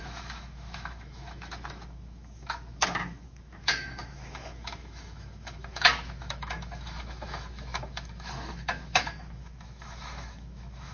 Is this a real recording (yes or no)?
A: no